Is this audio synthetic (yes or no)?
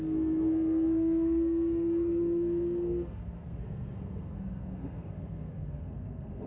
yes